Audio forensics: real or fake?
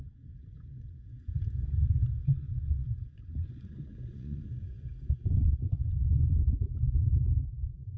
fake